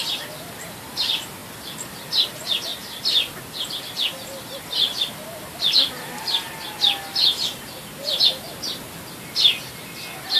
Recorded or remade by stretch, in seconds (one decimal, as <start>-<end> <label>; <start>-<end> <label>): 0.0-10.4 recorded